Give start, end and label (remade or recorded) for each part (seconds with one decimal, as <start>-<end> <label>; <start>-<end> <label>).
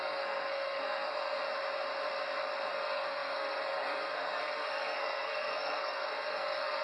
0.0-1.4 remade; 1.4-2.7 recorded; 2.7-6.8 remade